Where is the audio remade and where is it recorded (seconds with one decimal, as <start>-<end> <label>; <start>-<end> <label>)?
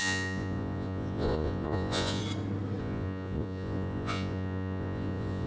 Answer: 0.0-2.2 remade; 2.2-2.8 recorded; 2.8-5.5 remade